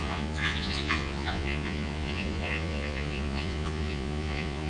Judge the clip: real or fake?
fake